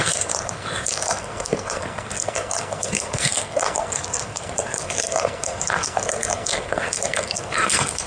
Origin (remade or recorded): remade